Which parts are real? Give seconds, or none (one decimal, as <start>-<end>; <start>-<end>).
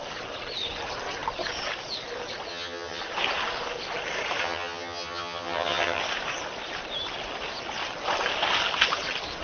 0.0-2.5; 3.0-4.4; 6.0-9.4